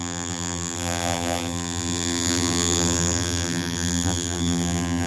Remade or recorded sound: remade